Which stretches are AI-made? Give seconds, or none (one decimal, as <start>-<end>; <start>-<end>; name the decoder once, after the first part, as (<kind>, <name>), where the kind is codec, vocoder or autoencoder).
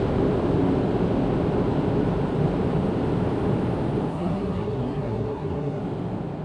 4.1-5.8 (codec, SNAC)